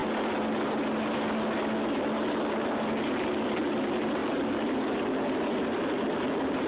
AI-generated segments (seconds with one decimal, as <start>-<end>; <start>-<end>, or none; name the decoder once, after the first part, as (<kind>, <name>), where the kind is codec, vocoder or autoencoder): none